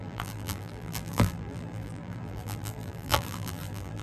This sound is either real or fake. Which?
fake